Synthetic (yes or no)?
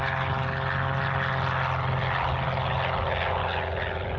no